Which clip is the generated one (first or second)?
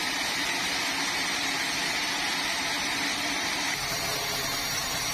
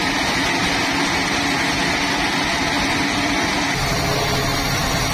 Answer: first